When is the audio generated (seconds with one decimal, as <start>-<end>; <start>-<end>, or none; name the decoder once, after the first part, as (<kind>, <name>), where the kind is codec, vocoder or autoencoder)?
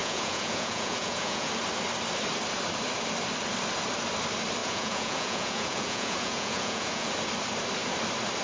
0.0-1.5 (vocoder, Vocos); 4.6-7.1